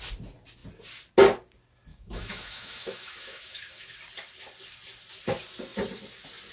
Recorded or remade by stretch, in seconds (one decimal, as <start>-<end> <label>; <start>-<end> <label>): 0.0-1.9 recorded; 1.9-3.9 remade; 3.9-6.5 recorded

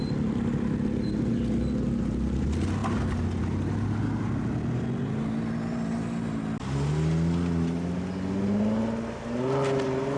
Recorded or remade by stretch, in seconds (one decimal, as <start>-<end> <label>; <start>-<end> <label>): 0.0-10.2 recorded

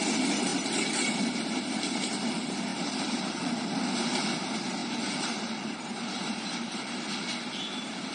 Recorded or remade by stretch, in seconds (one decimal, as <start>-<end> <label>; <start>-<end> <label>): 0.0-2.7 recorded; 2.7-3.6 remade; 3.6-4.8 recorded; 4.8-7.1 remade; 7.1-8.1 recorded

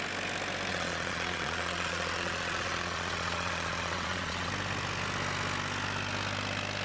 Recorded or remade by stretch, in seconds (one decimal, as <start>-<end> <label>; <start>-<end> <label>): 0.0-0.7 recorded; 0.7-4.5 remade; 4.5-6.8 recorded